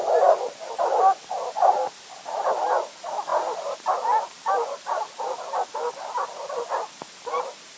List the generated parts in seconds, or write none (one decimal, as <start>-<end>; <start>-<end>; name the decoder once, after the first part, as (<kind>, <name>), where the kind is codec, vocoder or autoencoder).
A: none